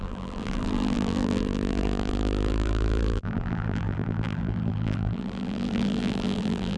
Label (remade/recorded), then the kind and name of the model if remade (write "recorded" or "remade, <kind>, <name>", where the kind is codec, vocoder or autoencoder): remade, vocoder, BigVGAN v2